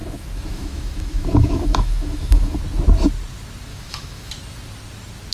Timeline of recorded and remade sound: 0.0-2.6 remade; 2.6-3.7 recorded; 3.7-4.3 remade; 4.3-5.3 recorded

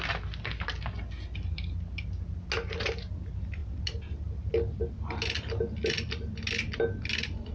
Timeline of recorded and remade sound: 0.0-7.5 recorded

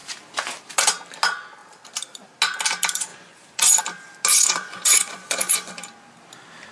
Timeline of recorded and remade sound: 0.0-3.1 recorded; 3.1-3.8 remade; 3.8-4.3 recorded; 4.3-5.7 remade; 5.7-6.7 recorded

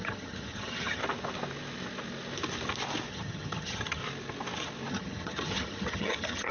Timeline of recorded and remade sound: 0.0-1.0 remade; 1.0-3.1 recorded; 3.1-4.0 remade; 4.0-4.9 recorded; 4.9-6.5 remade